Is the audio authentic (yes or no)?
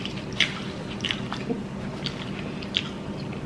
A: yes